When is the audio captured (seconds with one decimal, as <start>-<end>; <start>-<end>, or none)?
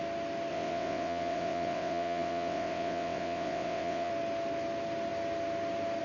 0.0-0.5; 4.1-6.0